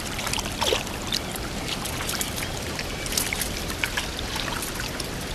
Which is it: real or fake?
fake